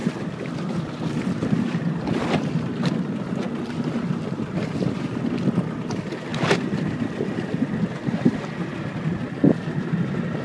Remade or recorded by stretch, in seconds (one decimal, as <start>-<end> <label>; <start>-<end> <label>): 0.0-2.9 remade; 2.9-6.3 recorded; 6.3-7.6 remade; 7.6-10.4 recorded